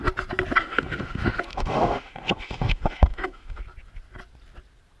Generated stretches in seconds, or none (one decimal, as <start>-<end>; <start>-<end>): 0.6-3.6